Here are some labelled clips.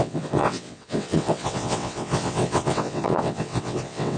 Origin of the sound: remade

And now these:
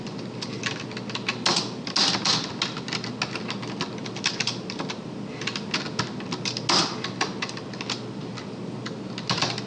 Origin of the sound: recorded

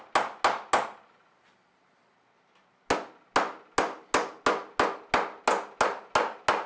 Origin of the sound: recorded